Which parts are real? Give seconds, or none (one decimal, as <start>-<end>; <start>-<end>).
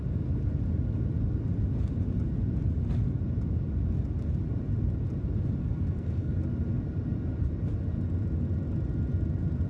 0.0-5.6; 6.3-9.7